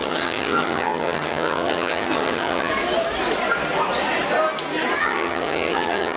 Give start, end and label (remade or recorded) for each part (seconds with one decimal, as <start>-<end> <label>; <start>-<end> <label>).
0.0-2.7 remade; 2.7-5.0 recorded; 5.0-6.2 remade